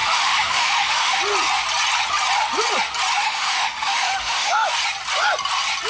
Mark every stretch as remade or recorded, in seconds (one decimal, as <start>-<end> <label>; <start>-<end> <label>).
0.0-1.2 remade; 1.2-3.2 recorded; 3.2-4.7 remade; 4.7-5.9 recorded